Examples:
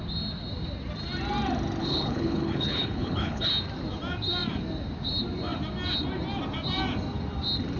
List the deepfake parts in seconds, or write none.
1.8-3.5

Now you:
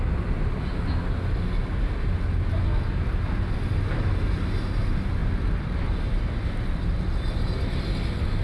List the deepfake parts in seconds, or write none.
none

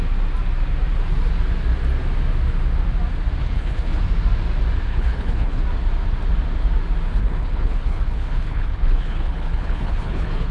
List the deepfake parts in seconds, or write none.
3.4-4.0; 4.9-5.6; 7.2-10.5

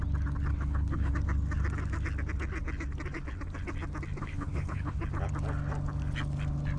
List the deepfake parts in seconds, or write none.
0.5-1.1; 4.2-5.0

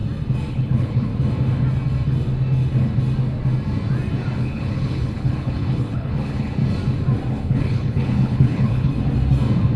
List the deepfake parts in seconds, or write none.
0.5-1.1; 4.4-6.6; 7.3-8.9

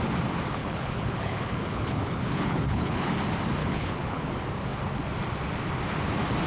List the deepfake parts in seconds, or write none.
0.6-3.1; 3.6-4.3

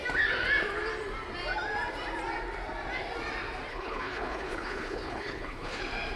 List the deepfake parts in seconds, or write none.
3.7-5.8